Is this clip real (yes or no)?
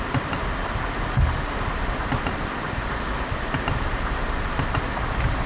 yes